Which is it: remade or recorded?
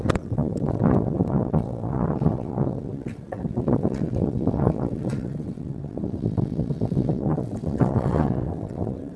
remade